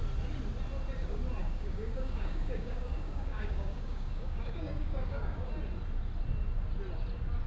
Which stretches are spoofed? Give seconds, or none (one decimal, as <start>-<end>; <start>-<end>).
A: 1.4-5.5

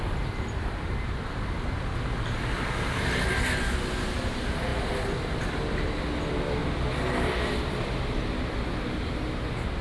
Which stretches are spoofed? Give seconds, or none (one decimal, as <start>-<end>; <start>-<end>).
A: none